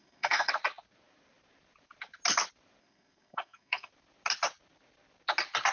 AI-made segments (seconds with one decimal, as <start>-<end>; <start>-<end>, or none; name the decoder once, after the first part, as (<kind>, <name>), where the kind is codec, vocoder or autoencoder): 0.0-0.5 (codec, SNAC); 2.8-3.9